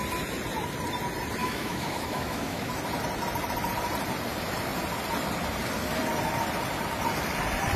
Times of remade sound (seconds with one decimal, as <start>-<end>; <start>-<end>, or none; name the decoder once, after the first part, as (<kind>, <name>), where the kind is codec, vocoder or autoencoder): 1.4-2.7 (autoencoder, DAC-VAE)

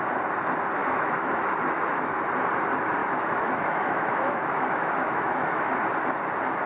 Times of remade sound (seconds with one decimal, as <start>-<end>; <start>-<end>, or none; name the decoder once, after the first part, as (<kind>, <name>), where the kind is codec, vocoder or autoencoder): 0.8-2.2 (autoencoder, DAC-VAE); 3.0-5.7

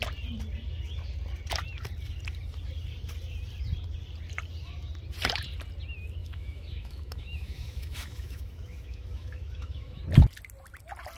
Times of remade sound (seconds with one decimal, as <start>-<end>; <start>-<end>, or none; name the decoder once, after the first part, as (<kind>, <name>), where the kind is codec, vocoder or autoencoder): 6.2-10.0 (autoencoder, DAC-VAE)

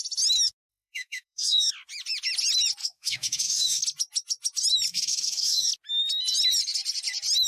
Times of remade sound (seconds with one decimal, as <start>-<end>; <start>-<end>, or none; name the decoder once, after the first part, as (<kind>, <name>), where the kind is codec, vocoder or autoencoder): 0.7-1.7 (autoencoder, DAC-VAE); 2.8-3.8; 4.9-5.7

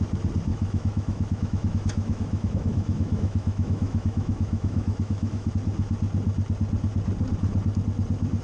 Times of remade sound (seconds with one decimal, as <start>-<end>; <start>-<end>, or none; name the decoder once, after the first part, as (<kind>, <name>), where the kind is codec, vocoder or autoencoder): 0.5-5.5 (autoencoder, DAC-VAE)

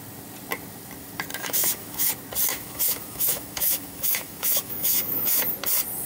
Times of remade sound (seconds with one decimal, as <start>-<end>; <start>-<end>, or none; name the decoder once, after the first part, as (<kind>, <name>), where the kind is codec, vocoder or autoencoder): 1.3-2.1 (autoencoder, DAC-VAE); 2.5-5.4

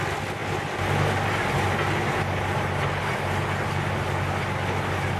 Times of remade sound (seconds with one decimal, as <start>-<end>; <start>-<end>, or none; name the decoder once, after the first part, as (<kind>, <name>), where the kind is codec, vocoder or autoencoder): none